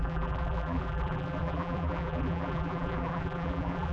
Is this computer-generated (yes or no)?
yes